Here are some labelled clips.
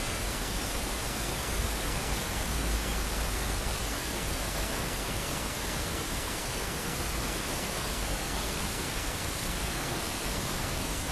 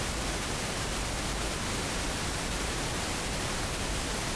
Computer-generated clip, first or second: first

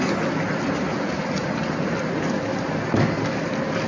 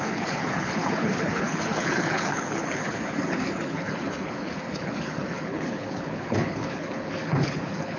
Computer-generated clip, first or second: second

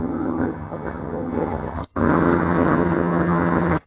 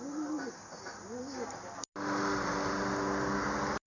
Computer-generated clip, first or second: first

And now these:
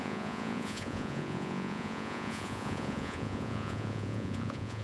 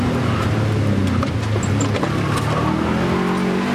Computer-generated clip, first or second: first